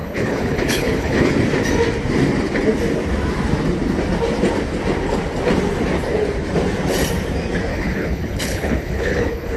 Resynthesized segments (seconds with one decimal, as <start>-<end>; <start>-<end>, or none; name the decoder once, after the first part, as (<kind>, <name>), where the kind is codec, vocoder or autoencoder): 0.0-1.3 (codec, HILCodec); 7.7-9.6